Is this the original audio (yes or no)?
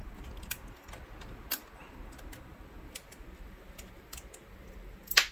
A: yes